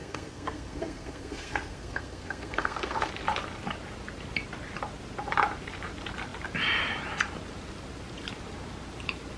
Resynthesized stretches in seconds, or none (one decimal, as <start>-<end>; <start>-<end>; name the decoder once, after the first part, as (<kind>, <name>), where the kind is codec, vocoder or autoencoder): 0.0-3.1 (codec, SNAC)